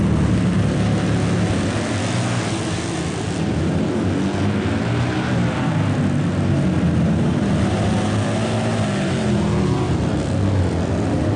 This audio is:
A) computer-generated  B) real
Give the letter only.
B